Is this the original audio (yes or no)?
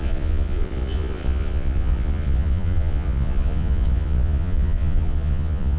no